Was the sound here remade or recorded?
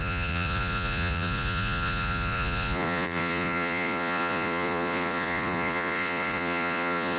remade